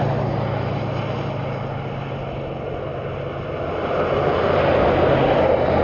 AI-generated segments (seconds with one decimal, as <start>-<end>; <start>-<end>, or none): none